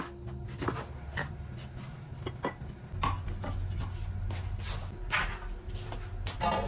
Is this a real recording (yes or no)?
yes